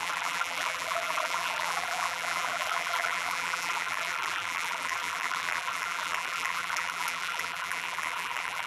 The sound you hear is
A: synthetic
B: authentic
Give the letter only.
A